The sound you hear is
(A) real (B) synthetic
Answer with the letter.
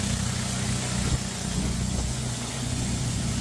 B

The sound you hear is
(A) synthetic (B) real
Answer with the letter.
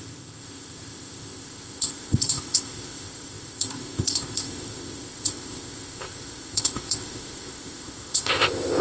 A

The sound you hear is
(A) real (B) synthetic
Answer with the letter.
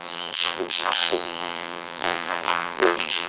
B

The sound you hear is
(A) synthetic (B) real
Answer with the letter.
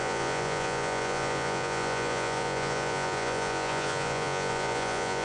A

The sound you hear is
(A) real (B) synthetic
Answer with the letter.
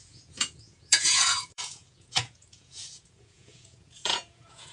B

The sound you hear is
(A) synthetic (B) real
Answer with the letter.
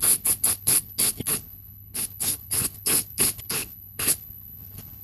A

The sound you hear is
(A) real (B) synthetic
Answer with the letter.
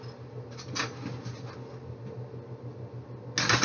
A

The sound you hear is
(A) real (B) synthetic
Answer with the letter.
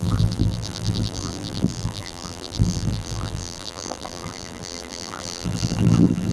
B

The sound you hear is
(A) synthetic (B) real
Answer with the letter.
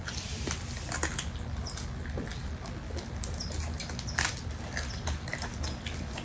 B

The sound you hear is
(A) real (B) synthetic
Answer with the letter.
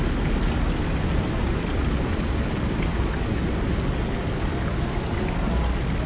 A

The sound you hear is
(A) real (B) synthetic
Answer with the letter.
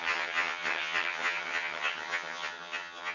B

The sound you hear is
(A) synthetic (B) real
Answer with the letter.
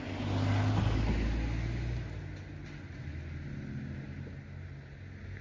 B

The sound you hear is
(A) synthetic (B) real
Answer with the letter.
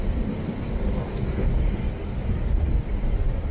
B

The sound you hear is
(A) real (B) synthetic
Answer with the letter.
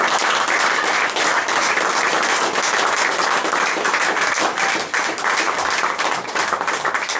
A